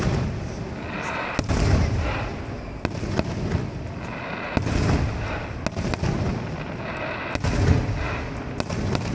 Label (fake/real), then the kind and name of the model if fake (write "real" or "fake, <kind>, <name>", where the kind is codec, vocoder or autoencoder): real